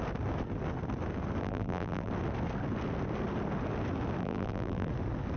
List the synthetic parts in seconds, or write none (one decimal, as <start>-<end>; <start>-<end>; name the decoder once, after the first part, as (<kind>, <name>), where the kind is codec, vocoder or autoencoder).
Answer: 1.4-2.1 (vocoder, BigVGAN v2); 4.2-4.9